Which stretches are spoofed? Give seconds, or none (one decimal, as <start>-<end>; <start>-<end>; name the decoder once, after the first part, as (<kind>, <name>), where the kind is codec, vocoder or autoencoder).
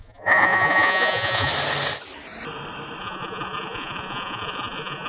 0.0-1.5 (vocoder, Vocos); 3.0-5.1